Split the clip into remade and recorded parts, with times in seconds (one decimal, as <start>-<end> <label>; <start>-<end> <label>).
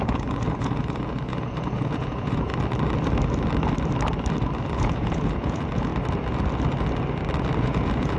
0.0-2.5 remade; 2.5-4.7 recorded; 4.7-5.9 remade; 5.9-7.6 recorded; 7.6-8.2 remade